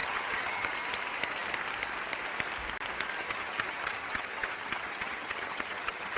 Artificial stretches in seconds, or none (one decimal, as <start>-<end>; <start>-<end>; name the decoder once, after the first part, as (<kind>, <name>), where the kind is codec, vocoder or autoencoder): 0.0-0.7 (vocoder, HiFi-GAN); 3.2-6.2